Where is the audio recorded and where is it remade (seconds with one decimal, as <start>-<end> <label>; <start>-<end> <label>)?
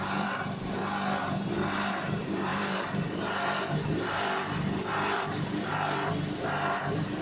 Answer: 0.0-0.8 remade; 0.8-1.5 recorded; 1.5-7.2 remade